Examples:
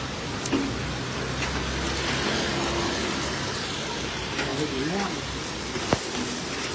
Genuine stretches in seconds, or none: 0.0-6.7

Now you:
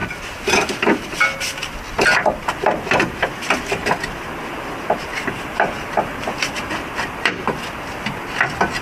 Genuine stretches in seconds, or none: 0.0-8.8

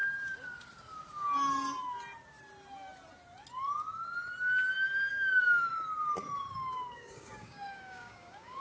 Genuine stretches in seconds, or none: 0.0-5.1; 5.7-6.5

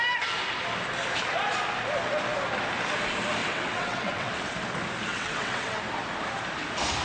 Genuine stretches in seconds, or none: 0.0-3.4; 4.3-5.1; 5.8-7.0

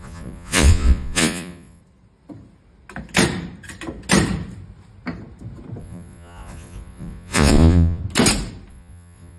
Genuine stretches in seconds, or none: 1.8-5.8; 8.0-8.7

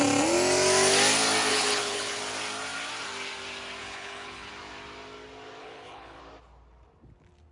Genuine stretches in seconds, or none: 0.0-1.5; 2.2-3.8; 4.5-5.6; 6.2-7.5